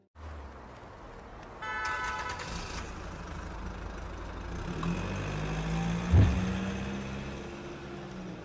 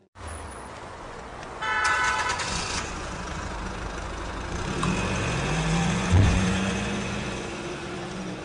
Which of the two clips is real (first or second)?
first